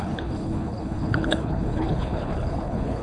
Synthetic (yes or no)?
yes